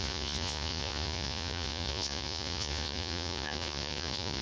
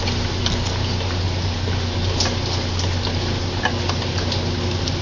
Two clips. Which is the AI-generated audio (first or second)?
first